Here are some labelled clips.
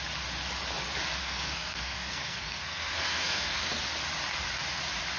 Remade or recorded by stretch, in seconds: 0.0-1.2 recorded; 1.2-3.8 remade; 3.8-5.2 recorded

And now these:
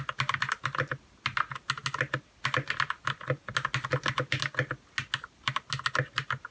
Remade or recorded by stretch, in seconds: 0.0-6.5 recorded

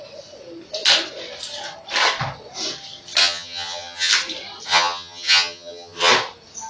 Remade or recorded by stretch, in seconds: 0.0-3.2 recorded; 3.2-4.1 remade; 4.1-4.7 recorded; 4.7-6.1 remade; 6.1-6.7 recorded

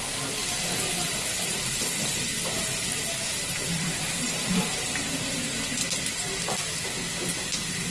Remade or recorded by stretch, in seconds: 0.0-2.6 recorded; 2.6-5.3 remade; 5.3-7.9 recorded

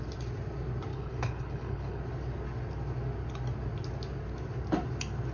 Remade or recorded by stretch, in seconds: 0.0-0.9 recorded; 0.9-2.0 remade; 2.0-5.3 recorded

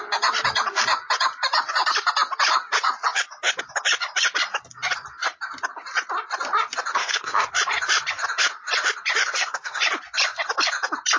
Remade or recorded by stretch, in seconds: 0.0-6.9 recorded; 6.9-7.5 remade; 7.5-9.2 recorded; 9.2-9.8 remade; 9.8-11.2 recorded

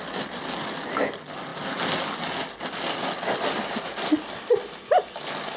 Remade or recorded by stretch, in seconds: 0.0-5.6 recorded